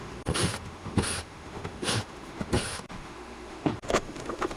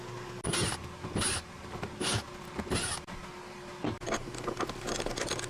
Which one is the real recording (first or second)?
second